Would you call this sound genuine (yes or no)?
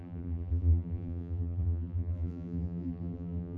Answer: no